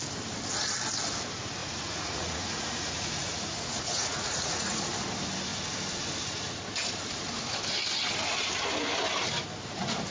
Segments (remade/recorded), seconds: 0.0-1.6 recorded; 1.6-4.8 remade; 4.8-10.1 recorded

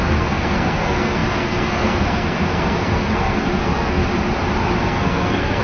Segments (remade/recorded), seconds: 0.0-4.0 remade; 4.0-4.8 recorded; 4.8-5.6 remade

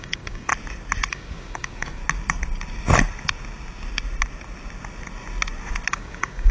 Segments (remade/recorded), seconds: 0.0-0.5 remade; 0.5-1.1 recorded; 1.1-2.0 remade; 2.0-5.9 recorded; 5.9-6.5 remade

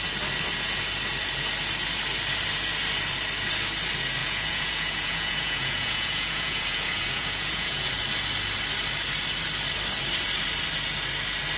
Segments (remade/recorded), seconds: 0.0-4.2 recorded; 4.2-7.9 remade; 7.9-11.6 recorded